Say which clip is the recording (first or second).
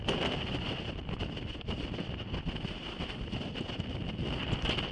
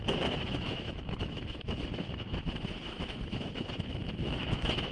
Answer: first